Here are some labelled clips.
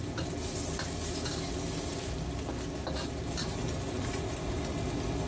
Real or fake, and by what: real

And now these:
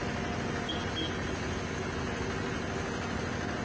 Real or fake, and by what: real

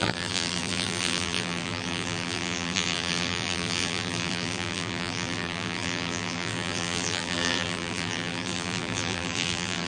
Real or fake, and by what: fake, vocoder, BigVGAN v2